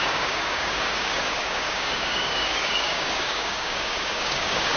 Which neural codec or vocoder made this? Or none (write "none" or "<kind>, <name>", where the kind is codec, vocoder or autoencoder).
codec, DAC